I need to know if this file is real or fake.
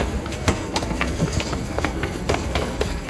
fake